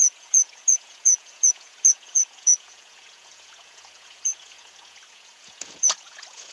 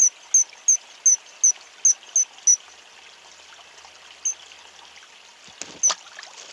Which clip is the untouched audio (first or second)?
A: second